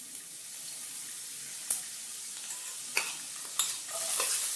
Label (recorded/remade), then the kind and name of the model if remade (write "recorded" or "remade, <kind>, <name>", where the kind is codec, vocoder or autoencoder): recorded